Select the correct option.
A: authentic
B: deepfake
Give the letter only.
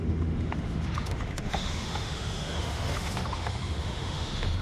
B